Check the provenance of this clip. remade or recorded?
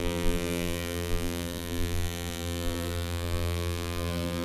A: remade